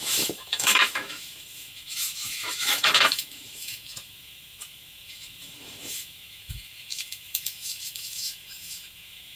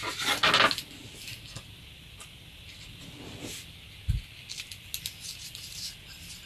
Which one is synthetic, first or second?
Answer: first